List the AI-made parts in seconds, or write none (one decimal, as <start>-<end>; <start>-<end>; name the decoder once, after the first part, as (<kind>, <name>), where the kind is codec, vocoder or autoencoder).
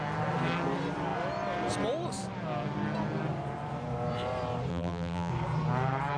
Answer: 4.7-5.3 (vocoder, BigVGAN v2)